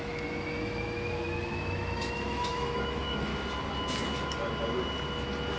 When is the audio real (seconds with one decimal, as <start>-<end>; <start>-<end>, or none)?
3.3-5.6